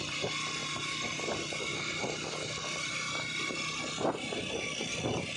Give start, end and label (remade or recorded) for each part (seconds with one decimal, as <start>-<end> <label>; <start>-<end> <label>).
0.0-0.6 recorded; 0.6-1.2 remade; 1.2-5.4 recorded